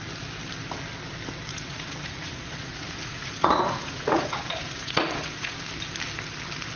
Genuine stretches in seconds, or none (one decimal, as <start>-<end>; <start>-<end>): 0.0-1.5; 5.6-6.8